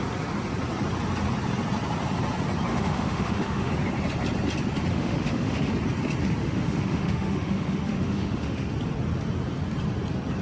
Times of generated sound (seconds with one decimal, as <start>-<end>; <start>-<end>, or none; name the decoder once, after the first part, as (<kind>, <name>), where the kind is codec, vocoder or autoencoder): 2.7-3.7 (autoencoder, DAC-VAE); 4.9-5.7; 6.4-8.7